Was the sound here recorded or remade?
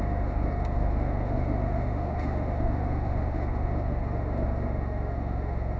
remade